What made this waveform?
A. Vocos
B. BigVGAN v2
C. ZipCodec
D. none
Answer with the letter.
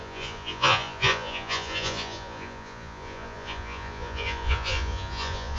A